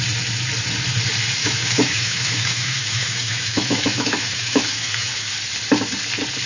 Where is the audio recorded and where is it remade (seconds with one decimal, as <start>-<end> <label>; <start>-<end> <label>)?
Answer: 0.0-1.4 recorded; 1.4-5.3 remade; 5.3-6.5 recorded